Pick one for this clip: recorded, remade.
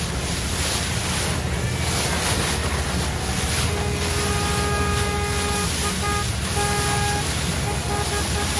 recorded